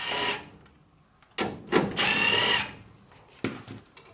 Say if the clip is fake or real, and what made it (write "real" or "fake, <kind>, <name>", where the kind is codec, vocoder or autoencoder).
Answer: real